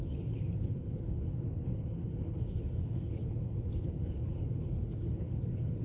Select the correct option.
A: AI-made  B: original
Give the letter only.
A